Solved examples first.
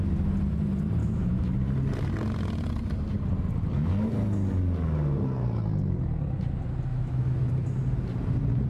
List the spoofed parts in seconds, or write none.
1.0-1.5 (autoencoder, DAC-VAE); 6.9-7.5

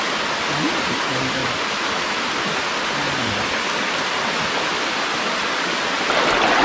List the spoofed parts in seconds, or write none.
none

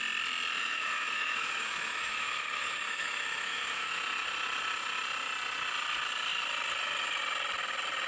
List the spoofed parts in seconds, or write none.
0.6-3.9 (autoencoder, DAC-VAE)

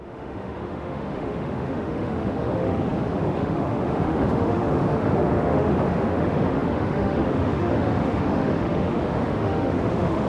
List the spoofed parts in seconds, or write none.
0.0-10.3 (autoencoder, DAC-VAE)

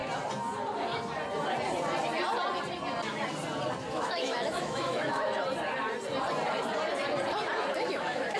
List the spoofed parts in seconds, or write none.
3.9-5.3 (autoencoder, DAC-VAE); 7.9-8.4

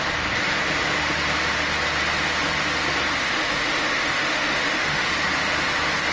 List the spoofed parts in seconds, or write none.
3.2-5.1 (autoencoder, DAC-VAE)

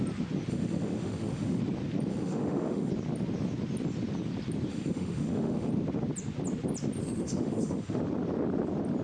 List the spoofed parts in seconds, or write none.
0.5-1.6 (autoencoder, DAC-VAE); 2.1-2.9; 4.7-5.7; 7.0-8.0